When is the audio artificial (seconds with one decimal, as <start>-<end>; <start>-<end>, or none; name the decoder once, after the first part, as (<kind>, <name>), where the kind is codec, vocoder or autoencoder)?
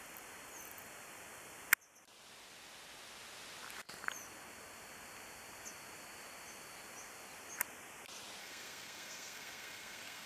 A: 8.4-10.3 (codec, SNAC)